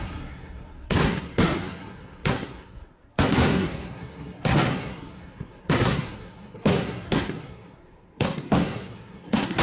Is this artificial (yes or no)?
yes